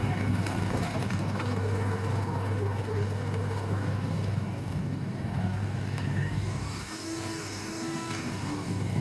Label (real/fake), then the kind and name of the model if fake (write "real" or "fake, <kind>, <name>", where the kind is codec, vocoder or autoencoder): fake, codec, DAC